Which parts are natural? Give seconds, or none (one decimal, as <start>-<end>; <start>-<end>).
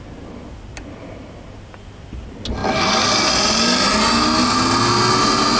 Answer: 0.0-5.6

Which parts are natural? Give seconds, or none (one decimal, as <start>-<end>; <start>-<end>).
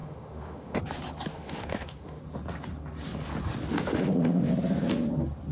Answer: 0.8-1.3; 2.2-3.9; 4.5-5.5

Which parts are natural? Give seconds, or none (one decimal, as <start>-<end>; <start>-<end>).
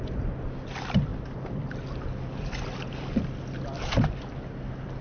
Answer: 0.0-5.0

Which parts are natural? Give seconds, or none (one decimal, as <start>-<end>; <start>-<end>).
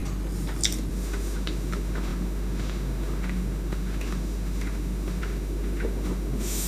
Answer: 0.0-0.9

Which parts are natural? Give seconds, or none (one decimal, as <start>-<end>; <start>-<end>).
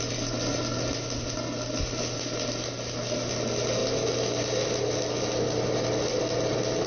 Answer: 0.0-6.9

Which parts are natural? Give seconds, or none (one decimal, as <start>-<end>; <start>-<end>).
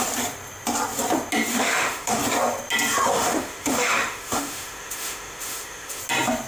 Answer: 0.0-1.5; 2.2-3.1; 6.0-6.5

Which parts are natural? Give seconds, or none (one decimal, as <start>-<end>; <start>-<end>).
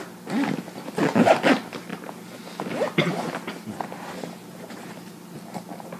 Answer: 0.0-6.0